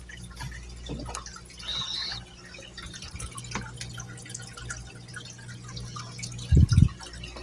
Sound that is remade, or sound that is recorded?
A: recorded